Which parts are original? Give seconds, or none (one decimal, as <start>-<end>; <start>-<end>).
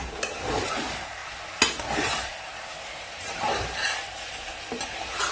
1.2-1.8; 2.3-3.2